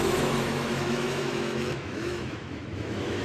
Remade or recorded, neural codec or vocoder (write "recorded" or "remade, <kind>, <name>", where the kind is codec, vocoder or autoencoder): remade, autoencoder, DAC-VAE